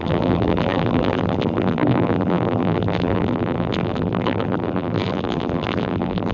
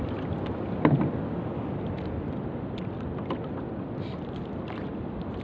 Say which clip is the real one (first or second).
second